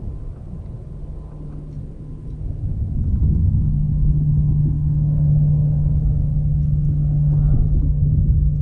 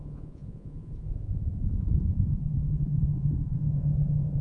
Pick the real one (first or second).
first